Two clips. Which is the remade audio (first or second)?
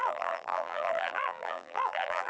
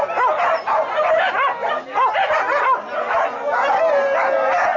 first